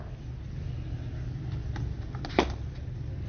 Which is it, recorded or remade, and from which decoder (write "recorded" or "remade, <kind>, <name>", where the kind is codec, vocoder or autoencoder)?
recorded